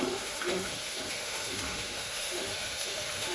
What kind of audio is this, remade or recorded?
remade